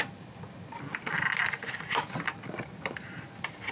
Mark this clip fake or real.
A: real